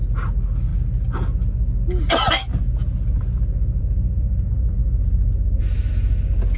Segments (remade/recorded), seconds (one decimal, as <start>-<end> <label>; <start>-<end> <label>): 0.0-6.6 recorded